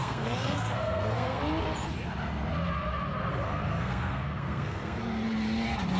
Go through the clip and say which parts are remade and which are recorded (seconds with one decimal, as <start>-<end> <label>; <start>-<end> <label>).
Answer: 0.0-1.4 remade; 1.4-3.3 recorded; 3.3-5.0 remade; 5.0-6.0 recorded